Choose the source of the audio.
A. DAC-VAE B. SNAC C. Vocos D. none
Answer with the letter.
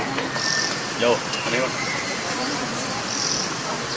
D